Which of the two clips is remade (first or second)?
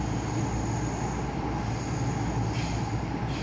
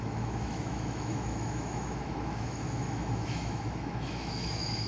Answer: second